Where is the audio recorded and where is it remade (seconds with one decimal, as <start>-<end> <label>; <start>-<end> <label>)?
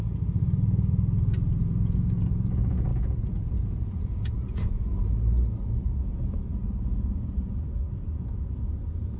0.0-5.1 remade; 5.1-6.0 recorded; 6.0-9.2 remade